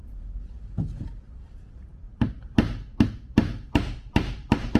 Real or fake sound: fake